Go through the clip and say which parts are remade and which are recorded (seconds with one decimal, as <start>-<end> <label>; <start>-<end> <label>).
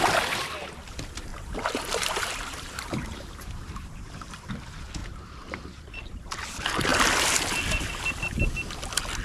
0.0-1.3 recorded; 1.3-4.5 remade; 4.5-5.0 recorded; 5.0-6.3 remade; 6.3-9.2 recorded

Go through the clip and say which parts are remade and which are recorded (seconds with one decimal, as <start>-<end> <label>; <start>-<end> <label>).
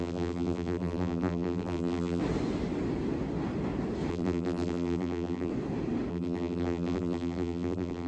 0.0-2.2 remade; 2.2-4.1 recorded; 4.1-5.5 remade; 5.5-6.1 recorded; 6.1-8.1 remade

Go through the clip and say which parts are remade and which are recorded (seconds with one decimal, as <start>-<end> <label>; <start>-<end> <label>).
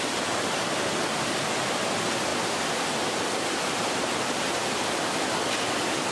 0.0-6.1 recorded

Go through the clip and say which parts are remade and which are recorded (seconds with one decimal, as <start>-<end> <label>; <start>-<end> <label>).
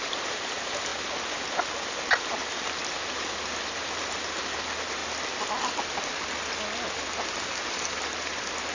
0.0-0.9 remade; 0.9-2.2 recorded; 2.2-5.0 remade; 5.0-7.4 recorded; 7.4-8.7 remade